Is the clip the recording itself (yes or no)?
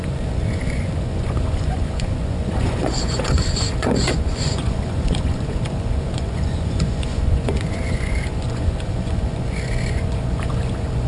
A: no